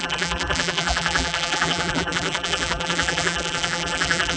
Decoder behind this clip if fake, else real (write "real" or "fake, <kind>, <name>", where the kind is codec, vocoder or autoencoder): fake, vocoder, BigVGAN v2